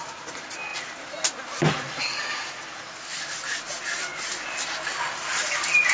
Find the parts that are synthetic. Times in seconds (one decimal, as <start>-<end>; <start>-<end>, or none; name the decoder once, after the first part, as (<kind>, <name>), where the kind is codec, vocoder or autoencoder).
none